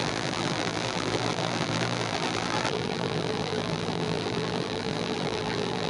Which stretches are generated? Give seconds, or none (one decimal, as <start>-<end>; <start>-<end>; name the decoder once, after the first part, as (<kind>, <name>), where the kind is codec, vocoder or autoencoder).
0.0-5.9 (vocoder, BigVGAN v2)